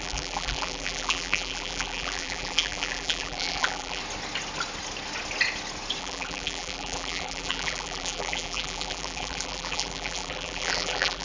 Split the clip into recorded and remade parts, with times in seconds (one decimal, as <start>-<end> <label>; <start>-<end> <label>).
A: 0.0-4.0 remade; 4.0-6.0 recorded; 6.0-11.2 remade